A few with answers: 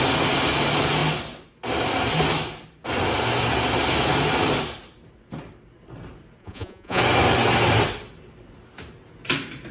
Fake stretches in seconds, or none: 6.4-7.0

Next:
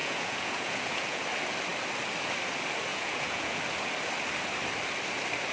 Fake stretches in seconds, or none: 0.0-1.2; 2.9-3.6

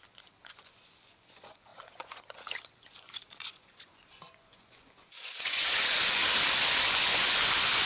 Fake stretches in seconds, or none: 0.0-6.2; 6.9-7.9

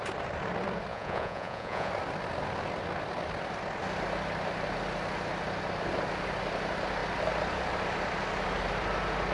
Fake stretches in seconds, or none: 0.9-1.9

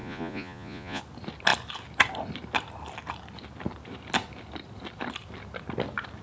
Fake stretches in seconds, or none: 0.0-1.0

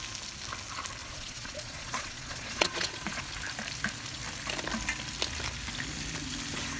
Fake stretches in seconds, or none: 1.0-3.3

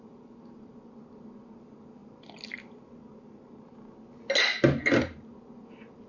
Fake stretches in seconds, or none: none

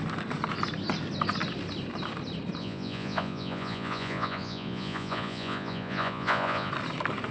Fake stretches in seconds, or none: 2.6-6.7